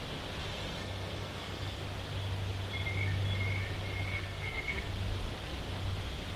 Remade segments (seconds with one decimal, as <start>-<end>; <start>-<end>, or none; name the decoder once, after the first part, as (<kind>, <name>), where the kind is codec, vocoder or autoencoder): 0.5-1.8 (codec, SNAC); 4.1-4.9